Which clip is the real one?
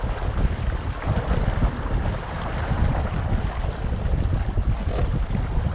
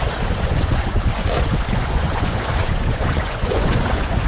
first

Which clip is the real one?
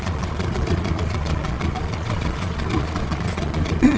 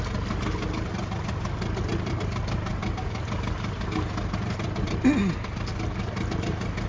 second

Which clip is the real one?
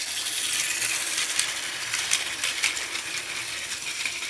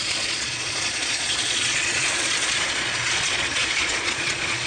first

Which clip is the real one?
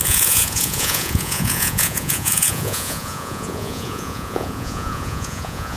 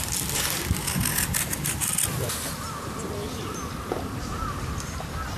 second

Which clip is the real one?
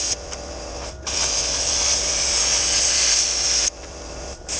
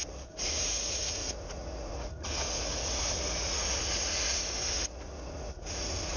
first